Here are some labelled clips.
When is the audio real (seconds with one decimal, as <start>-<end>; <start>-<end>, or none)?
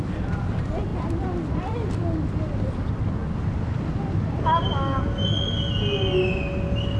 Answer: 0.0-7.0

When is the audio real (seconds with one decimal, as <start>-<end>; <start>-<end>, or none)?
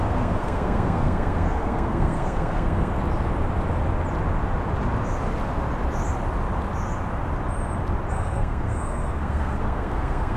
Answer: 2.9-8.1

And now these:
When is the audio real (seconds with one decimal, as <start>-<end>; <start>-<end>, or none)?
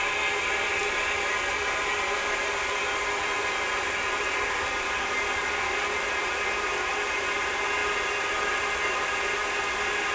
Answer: 0.0-10.1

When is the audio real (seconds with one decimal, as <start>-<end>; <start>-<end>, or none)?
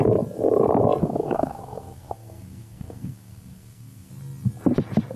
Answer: 0.0-1.0; 4.1-5.2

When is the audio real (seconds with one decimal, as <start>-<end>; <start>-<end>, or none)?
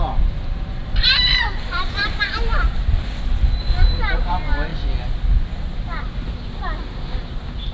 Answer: 0.0-0.7; 3.0-7.7